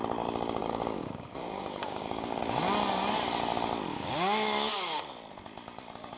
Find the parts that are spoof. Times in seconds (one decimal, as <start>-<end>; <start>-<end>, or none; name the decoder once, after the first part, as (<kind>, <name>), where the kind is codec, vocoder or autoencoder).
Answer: 0.6-2.4 (codec, DAC); 3.9-5.0